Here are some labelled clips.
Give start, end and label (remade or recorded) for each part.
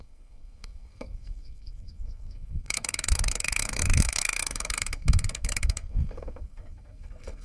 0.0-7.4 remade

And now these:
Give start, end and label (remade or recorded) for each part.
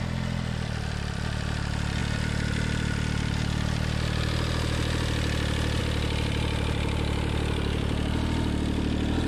0.0-9.3 recorded